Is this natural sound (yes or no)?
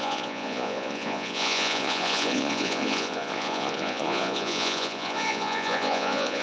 no